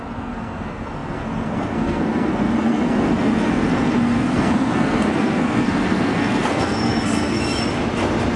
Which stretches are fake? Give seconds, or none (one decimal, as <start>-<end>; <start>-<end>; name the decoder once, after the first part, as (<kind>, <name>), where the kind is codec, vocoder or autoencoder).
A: 0.0-7.4 (codec, SNAC)